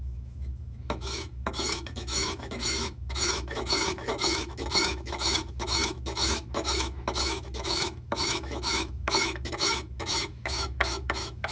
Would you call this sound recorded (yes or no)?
no